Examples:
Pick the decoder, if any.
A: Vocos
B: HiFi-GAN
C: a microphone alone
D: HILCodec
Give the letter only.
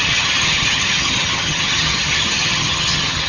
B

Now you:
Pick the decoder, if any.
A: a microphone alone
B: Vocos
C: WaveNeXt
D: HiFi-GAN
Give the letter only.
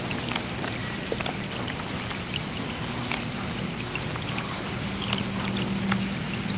A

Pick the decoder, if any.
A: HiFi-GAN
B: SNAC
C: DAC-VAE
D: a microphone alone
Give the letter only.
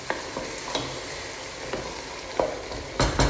D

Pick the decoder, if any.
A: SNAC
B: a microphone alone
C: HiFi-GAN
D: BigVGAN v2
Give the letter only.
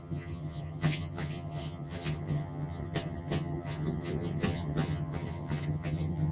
C